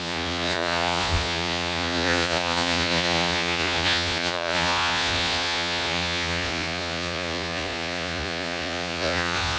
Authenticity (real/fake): fake